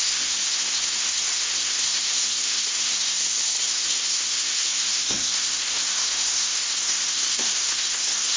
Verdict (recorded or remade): remade